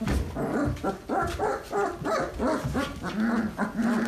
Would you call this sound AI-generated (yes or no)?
no